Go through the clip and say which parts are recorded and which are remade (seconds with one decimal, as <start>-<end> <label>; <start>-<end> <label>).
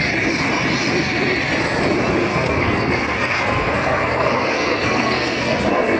0.0-2.3 recorded; 2.3-6.0 remade